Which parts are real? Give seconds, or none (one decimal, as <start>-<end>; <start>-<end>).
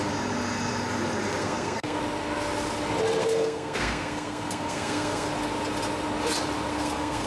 0.0-1.4; 2.0-3.2; 5.3-6.7